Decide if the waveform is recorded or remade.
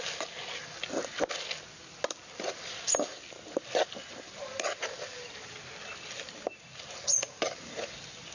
recorded